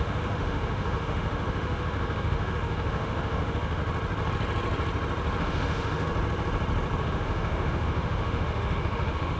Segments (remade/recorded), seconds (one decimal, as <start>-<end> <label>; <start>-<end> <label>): 0.0-3.8 remade; 3.8-5.4 recorded; 5.4-6.1 remade; 6.1-7.0 recorded; 7.0-9.4 remade